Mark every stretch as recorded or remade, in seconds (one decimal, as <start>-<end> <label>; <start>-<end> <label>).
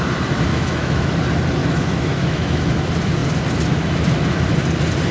0.0-0.5 recorded; 0.5-1.1 remade; 1.1-1.6 recorded; 1.6-2.7 remade; 2.7-5.1 recorded